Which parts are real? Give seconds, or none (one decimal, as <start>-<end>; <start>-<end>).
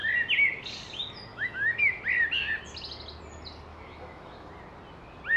0.0-1.3; 2.0-3.7; 4.5-5.4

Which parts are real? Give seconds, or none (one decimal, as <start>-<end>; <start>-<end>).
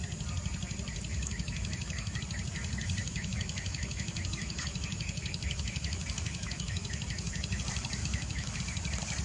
0.0-1.1; 2.2-3.0; 7.6-8.0; 8.6-9.2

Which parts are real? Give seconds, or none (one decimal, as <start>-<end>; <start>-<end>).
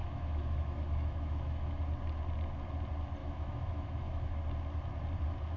1.8-3.2; 4.4-5.6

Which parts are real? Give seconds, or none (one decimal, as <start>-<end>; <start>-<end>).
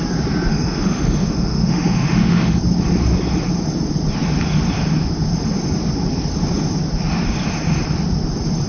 0.0-0.5; 2.6-8.7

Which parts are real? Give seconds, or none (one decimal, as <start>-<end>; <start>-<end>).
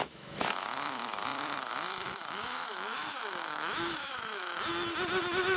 4.7-5.6